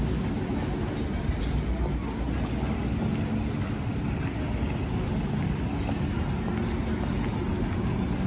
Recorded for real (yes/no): yes